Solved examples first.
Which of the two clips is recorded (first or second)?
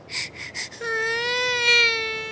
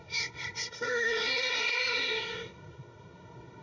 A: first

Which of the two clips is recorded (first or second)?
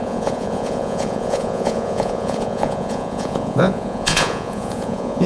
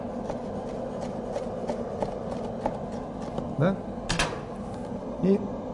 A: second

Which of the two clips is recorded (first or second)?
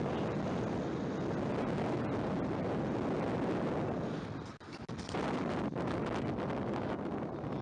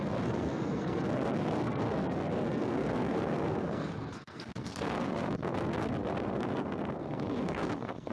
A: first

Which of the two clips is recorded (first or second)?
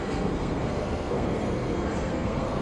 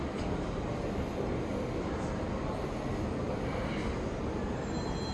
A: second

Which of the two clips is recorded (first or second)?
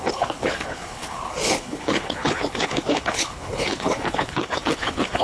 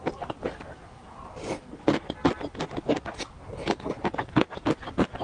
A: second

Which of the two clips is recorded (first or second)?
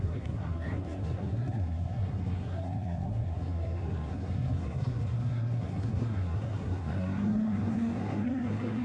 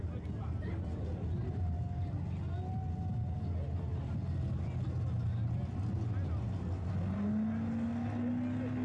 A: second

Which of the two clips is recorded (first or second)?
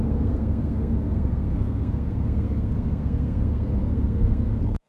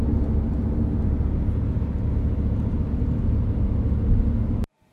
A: second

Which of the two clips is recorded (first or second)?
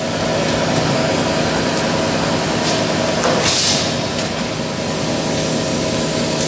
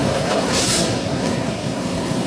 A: first